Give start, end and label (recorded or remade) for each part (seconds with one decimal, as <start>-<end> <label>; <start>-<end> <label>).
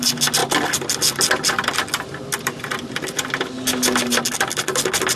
0.0-5.2 recorded